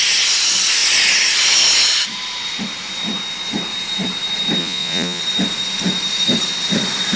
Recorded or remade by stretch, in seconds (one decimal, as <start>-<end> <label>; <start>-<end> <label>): 0.0-4.6 recorded; 4.6-5.2 remade; 5.2-7.2 recorded